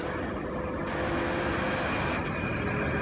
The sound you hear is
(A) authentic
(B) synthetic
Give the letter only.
A